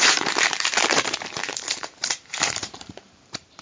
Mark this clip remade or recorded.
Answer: remade